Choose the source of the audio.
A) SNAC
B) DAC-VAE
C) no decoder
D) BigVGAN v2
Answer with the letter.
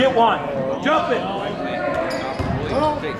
C